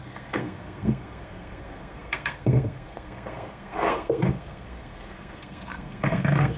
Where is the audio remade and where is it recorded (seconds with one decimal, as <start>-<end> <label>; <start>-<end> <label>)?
0.0-6.6 remade